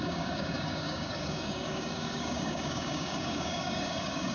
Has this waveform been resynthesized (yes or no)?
yes